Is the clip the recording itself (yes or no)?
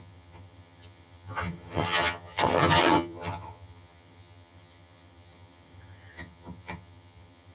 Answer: no